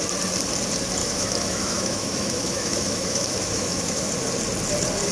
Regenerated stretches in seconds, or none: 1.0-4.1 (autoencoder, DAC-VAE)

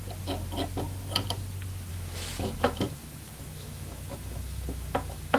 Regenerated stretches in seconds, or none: 1.9-5.4 (autoencoder, DAC-VAE)

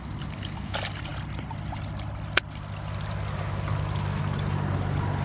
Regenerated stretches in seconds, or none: none

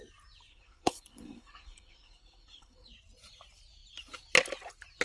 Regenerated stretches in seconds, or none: 0.5-2.9 (codec, HILCodec)

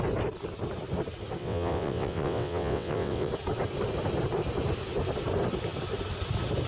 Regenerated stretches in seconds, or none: 1.4-3.3 (vocoder, WaveNeXt)

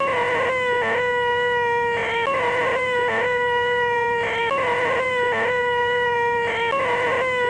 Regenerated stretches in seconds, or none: 2.0-6.5 (vocoder, BigVGAN v2)